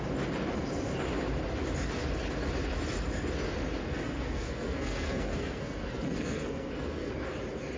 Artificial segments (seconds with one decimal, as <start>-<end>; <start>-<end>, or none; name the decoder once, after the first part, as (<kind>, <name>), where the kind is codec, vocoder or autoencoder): 3.8-7.1 (codec, SNAC)